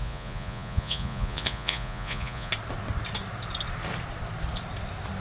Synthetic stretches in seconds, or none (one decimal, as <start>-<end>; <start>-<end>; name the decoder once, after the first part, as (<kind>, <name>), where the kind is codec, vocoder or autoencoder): 0.0-2.5 (vocoder, Vocos)